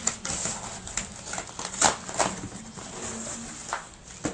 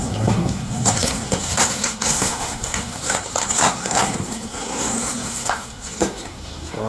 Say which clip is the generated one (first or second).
second